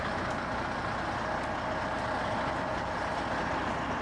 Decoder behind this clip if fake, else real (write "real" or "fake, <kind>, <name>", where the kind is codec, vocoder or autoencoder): real